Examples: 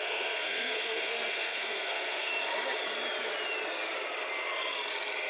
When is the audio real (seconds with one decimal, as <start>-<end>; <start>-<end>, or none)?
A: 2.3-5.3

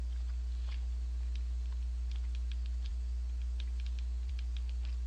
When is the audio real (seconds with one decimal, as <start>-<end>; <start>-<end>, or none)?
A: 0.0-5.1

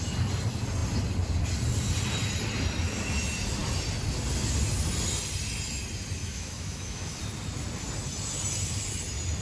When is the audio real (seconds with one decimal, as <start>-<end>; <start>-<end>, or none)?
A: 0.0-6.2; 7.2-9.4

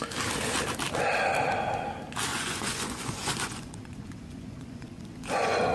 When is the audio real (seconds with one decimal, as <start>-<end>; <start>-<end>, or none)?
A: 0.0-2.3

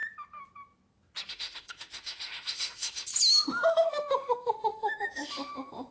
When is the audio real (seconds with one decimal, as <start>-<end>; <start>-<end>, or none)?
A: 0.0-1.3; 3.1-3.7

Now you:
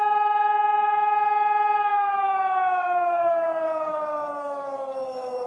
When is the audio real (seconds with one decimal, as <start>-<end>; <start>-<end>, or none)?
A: none